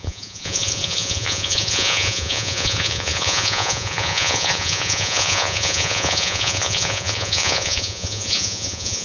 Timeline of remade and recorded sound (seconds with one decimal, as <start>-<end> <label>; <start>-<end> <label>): 0.0-9.0 remade

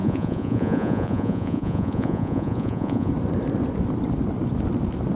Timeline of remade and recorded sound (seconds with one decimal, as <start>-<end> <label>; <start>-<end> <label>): 0.0-3.1 remade; 3.1-5.2 recorded

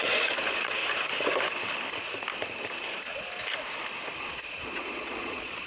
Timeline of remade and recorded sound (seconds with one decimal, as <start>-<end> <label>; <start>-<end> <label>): 0.0-0.8 remade; 0.8-4.2 recorded; 4.2-5.7 remade

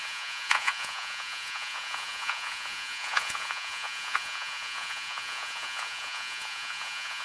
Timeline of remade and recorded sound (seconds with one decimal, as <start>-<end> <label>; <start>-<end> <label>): 0.0-7.2 remade